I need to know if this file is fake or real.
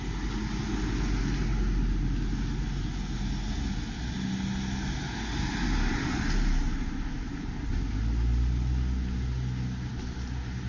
real